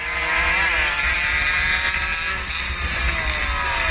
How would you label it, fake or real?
real